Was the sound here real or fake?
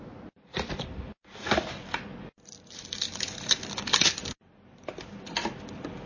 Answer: real